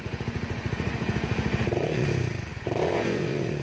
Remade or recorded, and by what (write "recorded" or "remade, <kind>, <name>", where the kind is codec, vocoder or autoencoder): remade, vocoder, Vocos